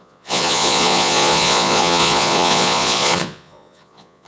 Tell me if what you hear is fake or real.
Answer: fake